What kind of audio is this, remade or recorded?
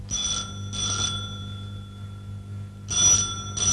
recorded